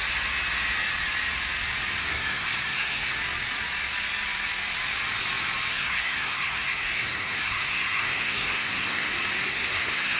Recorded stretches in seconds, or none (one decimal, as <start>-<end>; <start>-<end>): 0.0-2.0; 3.2-5.7; 9.1-9.5